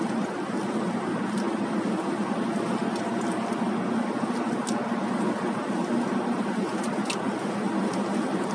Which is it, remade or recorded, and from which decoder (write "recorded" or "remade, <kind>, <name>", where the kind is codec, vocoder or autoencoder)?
recorded